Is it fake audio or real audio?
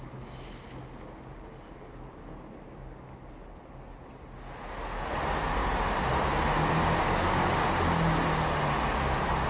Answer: real